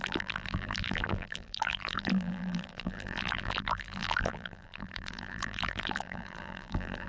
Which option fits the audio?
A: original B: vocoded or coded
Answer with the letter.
B